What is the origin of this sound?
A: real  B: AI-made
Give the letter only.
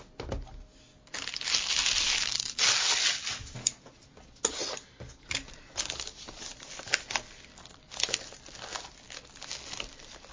A